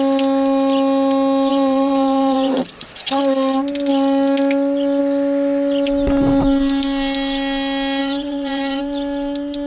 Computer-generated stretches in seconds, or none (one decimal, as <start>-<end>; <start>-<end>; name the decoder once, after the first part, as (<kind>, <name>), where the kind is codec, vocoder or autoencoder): 1.5-3.2 (vocoder, WaveNeXt); 8.0-8.8